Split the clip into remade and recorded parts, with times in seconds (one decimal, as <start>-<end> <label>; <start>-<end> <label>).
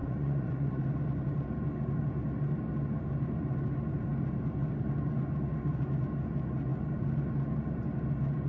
0.0-0.8 remade; 0.8-8.5 recorded